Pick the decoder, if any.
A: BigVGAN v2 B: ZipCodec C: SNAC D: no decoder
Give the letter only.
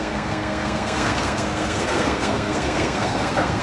C